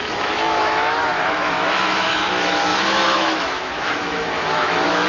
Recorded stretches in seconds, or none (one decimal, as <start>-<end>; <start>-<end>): none

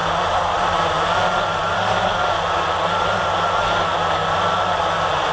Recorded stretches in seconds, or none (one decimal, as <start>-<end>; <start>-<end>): 0.0-5.3

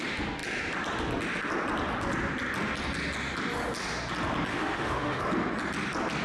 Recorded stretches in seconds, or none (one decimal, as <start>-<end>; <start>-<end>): 0.0-4.5; 5.2-6.2

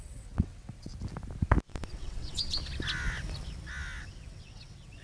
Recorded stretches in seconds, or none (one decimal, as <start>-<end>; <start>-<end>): 0.9-1.9; 2.6-4.0

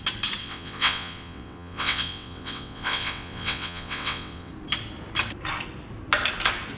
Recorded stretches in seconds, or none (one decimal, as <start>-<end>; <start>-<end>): 0.0-0.4; 4.5-6.8

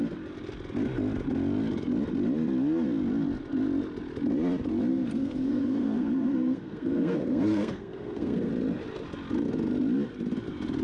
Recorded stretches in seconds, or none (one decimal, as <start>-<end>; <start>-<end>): 0.0-4.9; 8.5-10.8

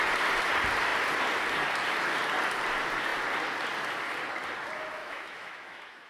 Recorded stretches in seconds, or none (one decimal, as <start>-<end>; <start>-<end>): 0.0-5.0

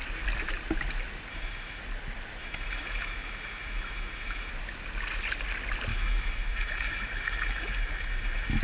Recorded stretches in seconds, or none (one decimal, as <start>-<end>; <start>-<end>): 0.0-1.3; 1.8-2.4; 4.5-5.9